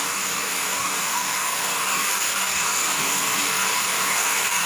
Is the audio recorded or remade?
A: remade